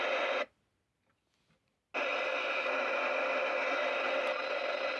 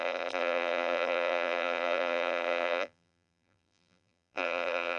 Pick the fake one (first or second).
second